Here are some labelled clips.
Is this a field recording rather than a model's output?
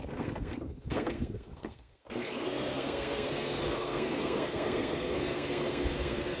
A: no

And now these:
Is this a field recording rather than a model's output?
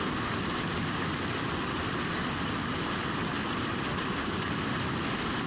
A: yes